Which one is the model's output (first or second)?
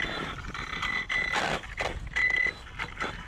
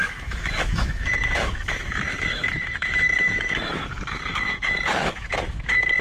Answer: second